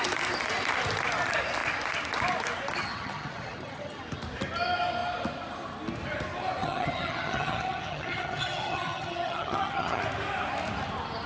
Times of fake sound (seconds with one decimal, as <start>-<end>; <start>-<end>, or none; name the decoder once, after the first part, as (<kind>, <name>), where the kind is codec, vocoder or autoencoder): 2.8-4.0 (vocoder, HiFi-GAN); 6.6-10.0

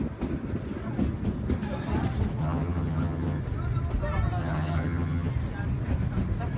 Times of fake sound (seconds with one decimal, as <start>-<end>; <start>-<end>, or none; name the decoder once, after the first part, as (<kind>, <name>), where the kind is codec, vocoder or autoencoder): 2.4-3.4 (vocoder, HiFi-GAN); 4.4-5.3

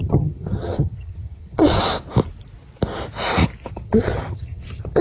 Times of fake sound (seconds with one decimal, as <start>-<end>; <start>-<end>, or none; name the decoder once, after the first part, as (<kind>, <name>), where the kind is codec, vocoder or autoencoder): 0.0-1.8 (vocoder, HiFi-GAN); 3.7-5.0

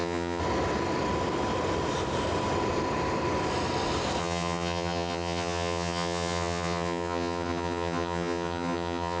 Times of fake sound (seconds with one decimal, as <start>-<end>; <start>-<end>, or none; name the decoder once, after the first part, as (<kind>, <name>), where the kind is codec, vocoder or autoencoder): 0.0-0.4 (vocoder, HiFi-GAN); 4.2-9.2

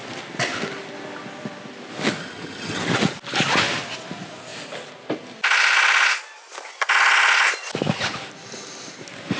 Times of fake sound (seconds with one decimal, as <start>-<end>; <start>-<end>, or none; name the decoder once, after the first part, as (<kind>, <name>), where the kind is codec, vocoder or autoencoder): 2.2-2.8 (vocoder, HiFi-GAN)